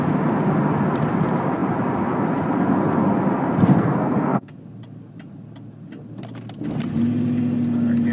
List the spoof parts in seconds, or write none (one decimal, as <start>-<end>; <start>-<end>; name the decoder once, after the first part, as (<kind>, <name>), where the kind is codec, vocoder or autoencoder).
3.7-4.5 (codec, SNAC)